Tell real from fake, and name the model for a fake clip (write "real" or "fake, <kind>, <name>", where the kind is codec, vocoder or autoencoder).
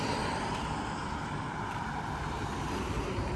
real